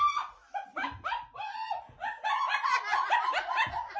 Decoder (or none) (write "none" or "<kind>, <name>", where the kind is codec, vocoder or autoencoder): none